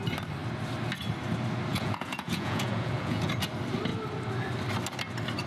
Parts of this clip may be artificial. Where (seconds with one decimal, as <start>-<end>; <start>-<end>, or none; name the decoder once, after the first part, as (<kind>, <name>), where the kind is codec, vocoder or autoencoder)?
1.7-3.3 (vocoder, Vocos)